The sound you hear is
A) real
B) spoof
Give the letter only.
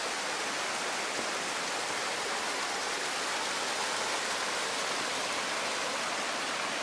A